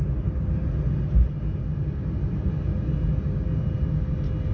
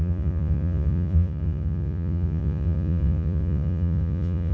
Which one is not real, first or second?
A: second